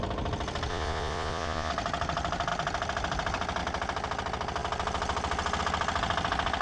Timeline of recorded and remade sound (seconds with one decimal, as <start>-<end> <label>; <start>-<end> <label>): 0.0-0.7 recorded; 0.7-1.7 remade; 1.7-6.6 recorded